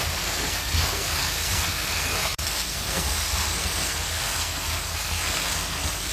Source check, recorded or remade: remade